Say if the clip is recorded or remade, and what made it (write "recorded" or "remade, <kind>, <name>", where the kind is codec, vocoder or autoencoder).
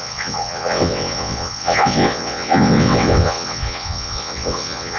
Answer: remade, vocoder, WaveNeXt